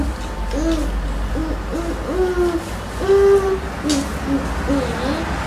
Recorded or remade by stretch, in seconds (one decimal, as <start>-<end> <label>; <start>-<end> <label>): 0.0-5.5 recorded